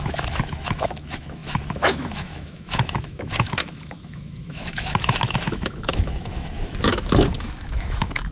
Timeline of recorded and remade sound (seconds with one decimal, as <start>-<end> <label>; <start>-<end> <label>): 0.0-8.3 remade